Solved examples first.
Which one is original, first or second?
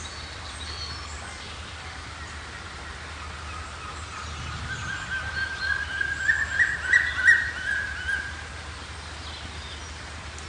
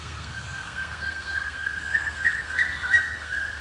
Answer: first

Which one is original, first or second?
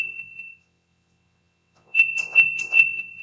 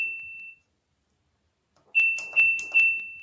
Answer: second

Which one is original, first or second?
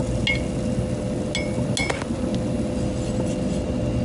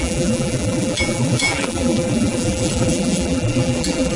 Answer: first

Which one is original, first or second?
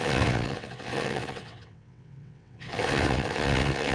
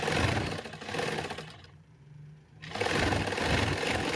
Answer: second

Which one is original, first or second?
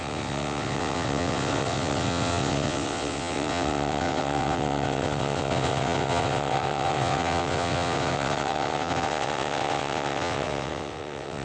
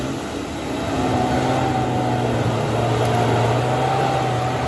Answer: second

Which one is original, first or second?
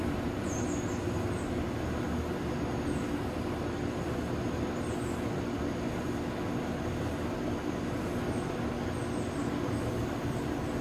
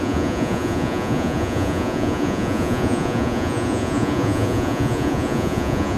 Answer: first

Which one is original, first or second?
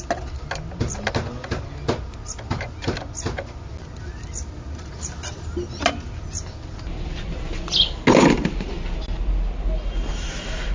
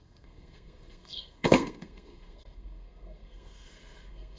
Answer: first